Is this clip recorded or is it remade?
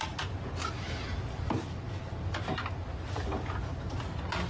recorded